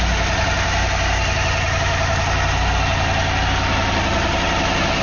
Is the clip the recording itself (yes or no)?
yes